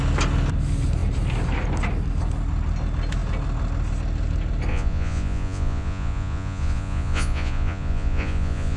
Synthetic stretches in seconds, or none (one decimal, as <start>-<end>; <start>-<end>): 4.7-8.8